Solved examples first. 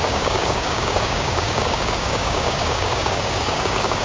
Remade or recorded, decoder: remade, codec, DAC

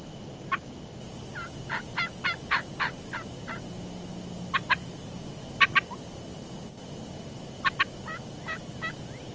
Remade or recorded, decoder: recorded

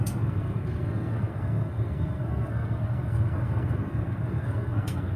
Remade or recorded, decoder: remade, codec, SNAC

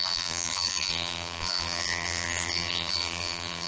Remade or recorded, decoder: remade, vocoder, BigVGAN v2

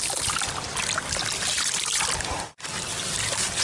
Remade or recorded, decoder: recorded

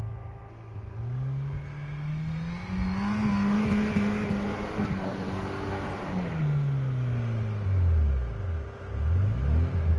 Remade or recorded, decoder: recorded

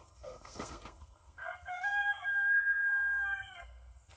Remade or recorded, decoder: remade, codec, SNAC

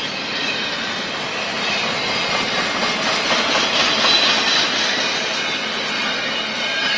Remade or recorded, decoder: recorded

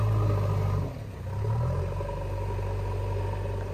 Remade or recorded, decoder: recorded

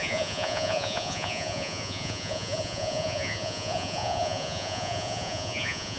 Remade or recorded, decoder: remade, vocoder, Vocos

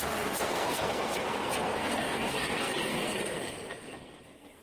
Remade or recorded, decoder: remade, codec, SNAC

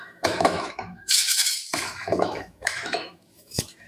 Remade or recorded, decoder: remade, autoencoder, DAC-VAE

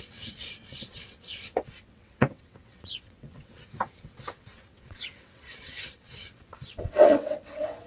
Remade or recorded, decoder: remade, vocoder, WaveNeXt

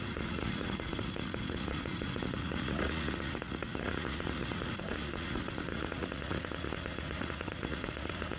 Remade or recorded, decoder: remade, vocoder, Vocos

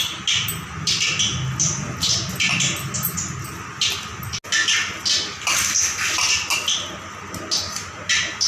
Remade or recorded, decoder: recorded